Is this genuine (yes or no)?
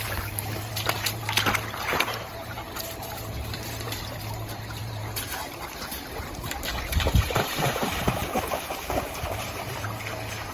no